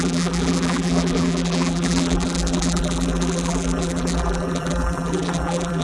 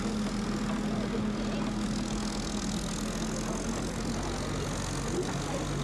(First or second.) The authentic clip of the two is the second